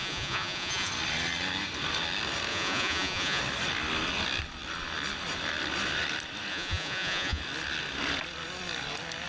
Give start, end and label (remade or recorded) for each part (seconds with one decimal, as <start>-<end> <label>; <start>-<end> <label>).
0.0-0.9 remade; 0.9-2.5 recorded; 2.5-3.4 remade; 3.4-6.5 recorded; 6.5-7.4 remade; 7.4-9.3 recorded